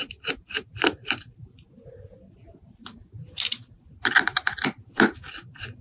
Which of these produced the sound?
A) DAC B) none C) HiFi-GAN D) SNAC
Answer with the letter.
B